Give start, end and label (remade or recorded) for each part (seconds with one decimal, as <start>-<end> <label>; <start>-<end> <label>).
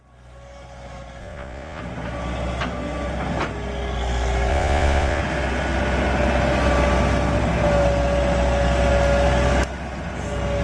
0.0-1.2 recorded; 1.2-1.8 remade; 1.8-4.5 recorded; 4.5-5.2 remade; 5.2-10.6 recorded